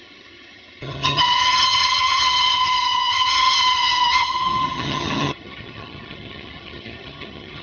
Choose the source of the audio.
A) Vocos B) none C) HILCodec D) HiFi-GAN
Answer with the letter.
D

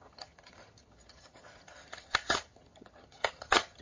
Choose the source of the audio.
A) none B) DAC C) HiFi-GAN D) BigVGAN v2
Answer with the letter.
C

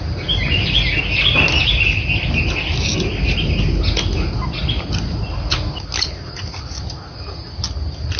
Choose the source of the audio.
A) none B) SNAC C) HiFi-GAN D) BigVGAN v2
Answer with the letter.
A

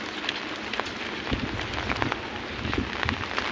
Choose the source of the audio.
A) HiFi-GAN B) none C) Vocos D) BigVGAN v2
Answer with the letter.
B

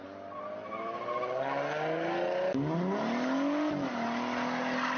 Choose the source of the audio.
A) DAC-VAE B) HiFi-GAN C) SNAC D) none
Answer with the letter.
D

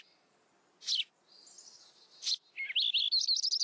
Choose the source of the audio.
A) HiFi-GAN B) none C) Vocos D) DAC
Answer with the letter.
B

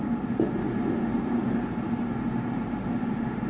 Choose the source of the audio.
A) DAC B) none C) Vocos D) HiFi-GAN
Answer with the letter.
B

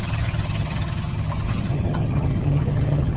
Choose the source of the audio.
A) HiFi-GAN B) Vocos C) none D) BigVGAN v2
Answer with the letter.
A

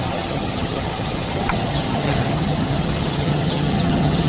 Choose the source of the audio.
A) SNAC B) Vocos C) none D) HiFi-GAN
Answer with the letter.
D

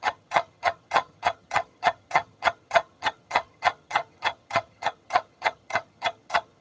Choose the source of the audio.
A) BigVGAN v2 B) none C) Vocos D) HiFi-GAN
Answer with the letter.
D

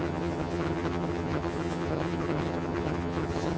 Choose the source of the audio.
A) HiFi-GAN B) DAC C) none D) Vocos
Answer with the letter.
A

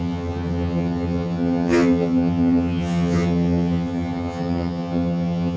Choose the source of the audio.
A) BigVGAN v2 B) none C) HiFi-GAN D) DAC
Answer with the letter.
C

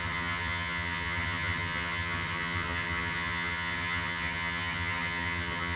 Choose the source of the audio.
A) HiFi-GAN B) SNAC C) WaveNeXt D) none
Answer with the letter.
A